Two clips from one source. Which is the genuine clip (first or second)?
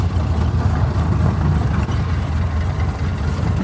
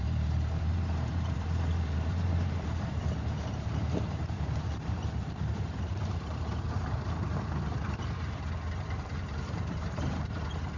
first